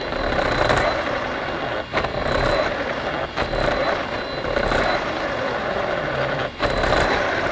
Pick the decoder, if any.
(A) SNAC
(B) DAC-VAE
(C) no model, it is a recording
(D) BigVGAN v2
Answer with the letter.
C